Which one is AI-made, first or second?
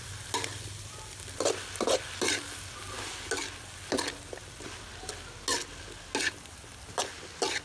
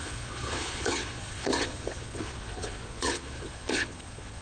second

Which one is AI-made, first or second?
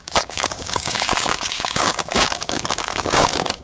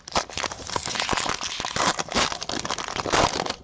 first